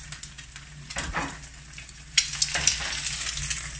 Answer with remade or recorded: recorded